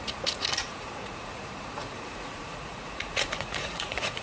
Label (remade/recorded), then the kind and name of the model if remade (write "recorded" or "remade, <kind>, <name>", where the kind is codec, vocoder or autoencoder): remade, vocoder, Vocos